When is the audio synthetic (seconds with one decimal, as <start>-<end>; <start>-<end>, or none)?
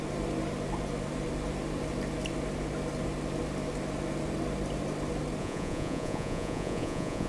5.4-7.3